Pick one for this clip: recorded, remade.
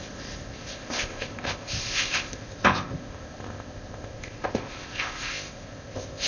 remade